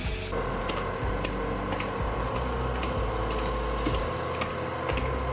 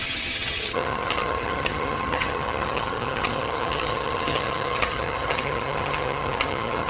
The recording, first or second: first